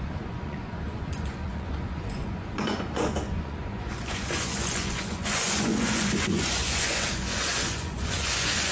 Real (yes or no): no